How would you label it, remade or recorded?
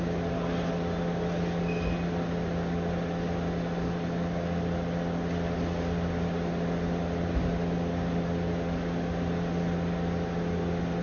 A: recorded